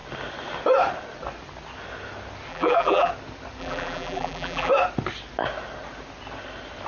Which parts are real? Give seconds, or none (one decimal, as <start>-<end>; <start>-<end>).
0.0-2.5; 3.1-3.6; 4.7-6.9